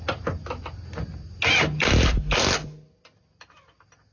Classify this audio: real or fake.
real